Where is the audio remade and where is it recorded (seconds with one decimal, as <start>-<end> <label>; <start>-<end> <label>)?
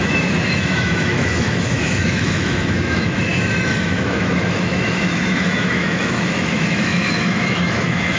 0.0-8.2 remade